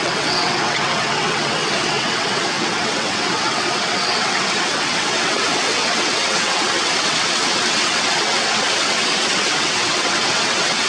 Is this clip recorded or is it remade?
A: remade